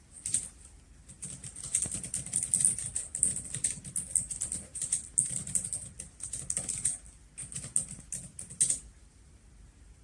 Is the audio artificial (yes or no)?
no